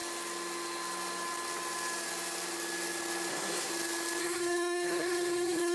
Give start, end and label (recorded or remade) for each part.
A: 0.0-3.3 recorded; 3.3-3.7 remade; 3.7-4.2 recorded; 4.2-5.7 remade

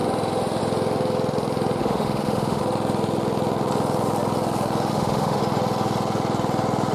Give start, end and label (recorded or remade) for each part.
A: 0.0-1.8 recorded; 1.8-2.6 remade; 2.6-4.9 recorded; 4.9-5.4 remade; 5.4-6.9 recorded

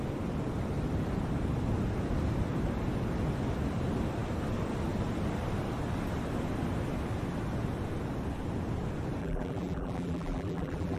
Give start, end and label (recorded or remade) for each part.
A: 0.0-9.2 recorded; 9.2-11.0 remade

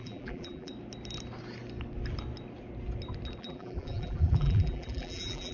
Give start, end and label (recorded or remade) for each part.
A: 0.0-0.7 remade; 0.7-3.4 recorded; 3.4-5.5 remade

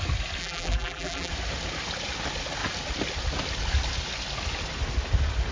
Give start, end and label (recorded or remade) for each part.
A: 0.0-0.4 recorded; 0.4-1.3 remade; 1.3-5.5 recorded

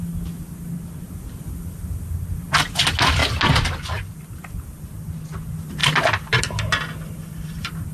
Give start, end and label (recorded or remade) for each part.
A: 0.0-7.9 recorded